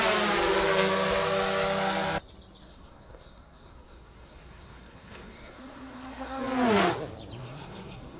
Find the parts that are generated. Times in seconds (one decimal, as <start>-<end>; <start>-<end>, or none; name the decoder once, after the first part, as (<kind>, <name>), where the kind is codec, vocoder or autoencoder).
2.6-6.4 (codec, SNAC); 7.4-8.2

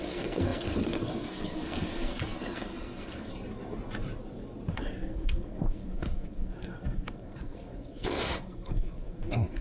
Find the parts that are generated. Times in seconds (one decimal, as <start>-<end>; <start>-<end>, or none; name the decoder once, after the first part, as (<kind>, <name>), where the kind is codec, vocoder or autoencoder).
0.0-3.3 (codec, SNAC); 4.7-9.6

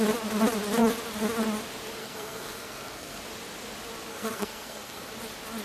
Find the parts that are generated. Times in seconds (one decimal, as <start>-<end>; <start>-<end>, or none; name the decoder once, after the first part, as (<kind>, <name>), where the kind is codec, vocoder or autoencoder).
2.0-3.2 (codec, SNAC); 4.1-5.1

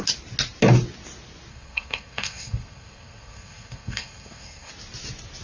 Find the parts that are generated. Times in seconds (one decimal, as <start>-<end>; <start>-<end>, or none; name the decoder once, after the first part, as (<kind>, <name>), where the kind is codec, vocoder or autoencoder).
1.5-4.7 (codec, SNAC)

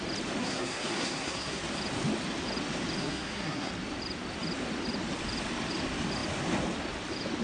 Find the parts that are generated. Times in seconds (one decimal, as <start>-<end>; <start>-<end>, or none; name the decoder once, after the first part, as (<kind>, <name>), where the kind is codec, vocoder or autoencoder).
0.4-1.6 (codec, SNAC); 3.0-3.7